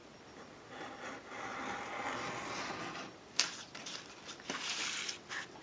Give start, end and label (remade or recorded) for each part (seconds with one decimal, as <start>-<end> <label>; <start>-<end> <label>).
0.0-5.6 recorded